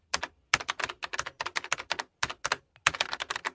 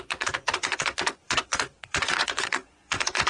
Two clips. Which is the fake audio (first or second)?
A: second